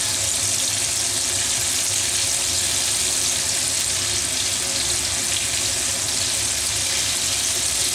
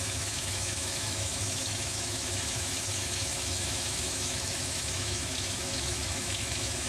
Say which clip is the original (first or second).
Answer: first